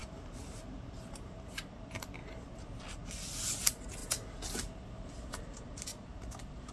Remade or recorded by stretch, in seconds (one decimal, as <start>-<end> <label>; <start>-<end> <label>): 0.0-1.8 remade; 1.8-5.9 recorded; 5.9-6.7 remade